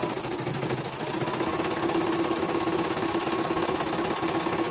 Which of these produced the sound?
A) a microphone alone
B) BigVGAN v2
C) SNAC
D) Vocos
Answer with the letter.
A